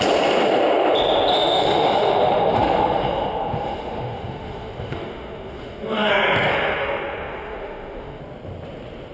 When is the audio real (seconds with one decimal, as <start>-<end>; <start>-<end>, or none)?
0.0-1.3; 6.1-6.5; 8.2-9.1

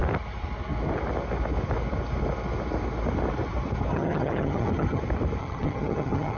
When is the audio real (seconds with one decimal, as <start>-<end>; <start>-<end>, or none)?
0.0-3.9; 5.0-5.4